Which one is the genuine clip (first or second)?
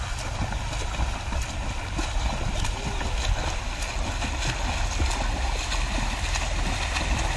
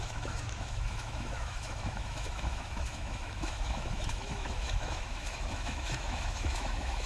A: first